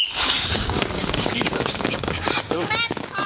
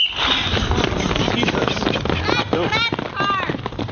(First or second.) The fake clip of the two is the first